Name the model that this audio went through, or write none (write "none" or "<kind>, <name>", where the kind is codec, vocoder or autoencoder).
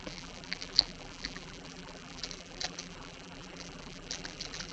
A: vocoder, BigVGAN v2